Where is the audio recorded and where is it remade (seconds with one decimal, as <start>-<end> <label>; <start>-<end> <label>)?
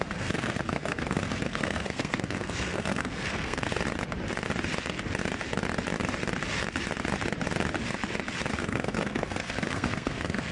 0.0-3.7 remade; 3.7-8.5 recorded; 8.5-10.5 remade